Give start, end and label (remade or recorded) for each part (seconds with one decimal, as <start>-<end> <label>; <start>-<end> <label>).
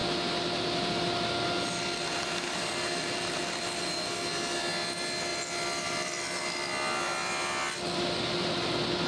0.0-9.1 recorded